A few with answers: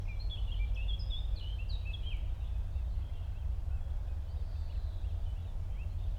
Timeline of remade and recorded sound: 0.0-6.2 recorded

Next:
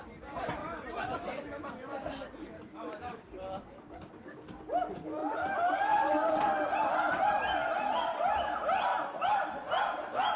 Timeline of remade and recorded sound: 0.0-0.6 recorded; 0.6-1.5 remade; 1.5-8.9 recorded; 8.9-10.4 remade

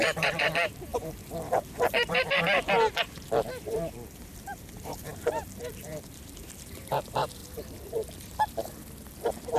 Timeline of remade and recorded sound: 0.0-7.4 remade; 7.4-9.1 recorded; 9.1-9.6 remade

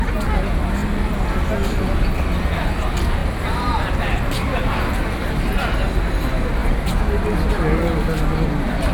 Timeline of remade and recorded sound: 0.0-8.9 recorded